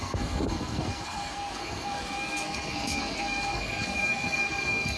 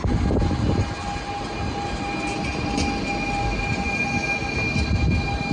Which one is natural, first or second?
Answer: second